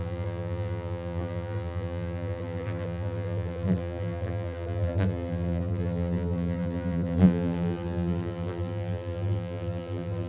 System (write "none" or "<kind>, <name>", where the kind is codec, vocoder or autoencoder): vocoder, BigVGAN v2